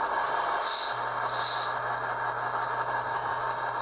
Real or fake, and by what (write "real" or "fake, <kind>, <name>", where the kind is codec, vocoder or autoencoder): real